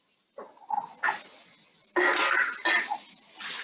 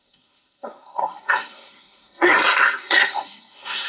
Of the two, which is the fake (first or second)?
second